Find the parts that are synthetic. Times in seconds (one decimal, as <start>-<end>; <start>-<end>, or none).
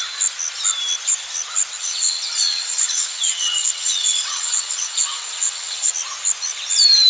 1.8-5.9